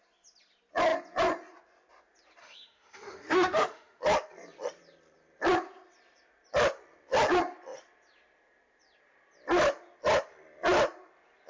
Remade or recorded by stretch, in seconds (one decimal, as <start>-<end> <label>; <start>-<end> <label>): 0.0-2.4 recorded; 2.4-4.0 remade; 4.0-11.5 recorded